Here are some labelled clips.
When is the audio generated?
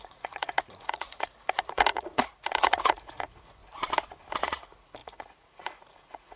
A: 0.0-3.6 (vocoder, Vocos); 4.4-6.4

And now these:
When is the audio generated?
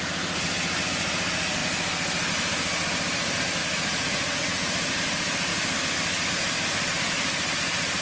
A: 3.6-5.0 (vocoder, Vocos)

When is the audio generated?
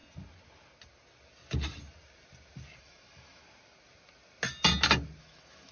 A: 2.8-3.4 (autoencoder, DAC-VAE); 5.2-5.7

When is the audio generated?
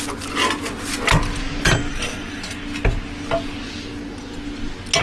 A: 1.9-2.4 (codec, DAC)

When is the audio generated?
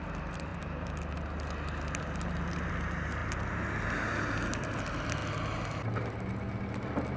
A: none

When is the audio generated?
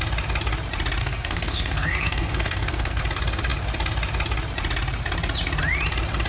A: 1.0-3.0 (codec, SNAC)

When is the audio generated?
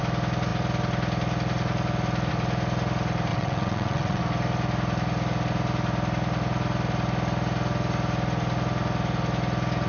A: 3.3-4.2 (vocoder, WaveNeXt)